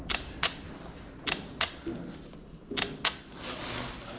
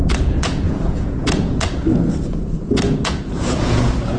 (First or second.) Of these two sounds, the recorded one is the first